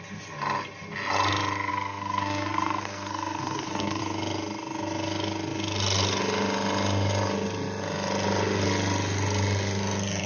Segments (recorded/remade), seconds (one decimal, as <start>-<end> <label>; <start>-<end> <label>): 0.0-1.7 recorded; 1.7-4.0 remade; 4.0-10.3 recorded